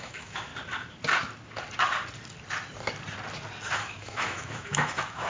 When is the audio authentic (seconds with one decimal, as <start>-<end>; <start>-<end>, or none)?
0.5-3.7